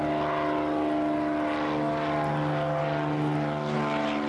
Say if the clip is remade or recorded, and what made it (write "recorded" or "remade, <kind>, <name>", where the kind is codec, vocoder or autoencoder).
recorded